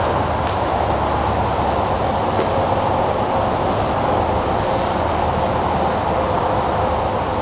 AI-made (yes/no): no